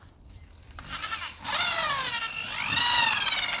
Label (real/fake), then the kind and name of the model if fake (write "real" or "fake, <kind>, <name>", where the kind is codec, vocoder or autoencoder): real